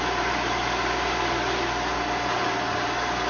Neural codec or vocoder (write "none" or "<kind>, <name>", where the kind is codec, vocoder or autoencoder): none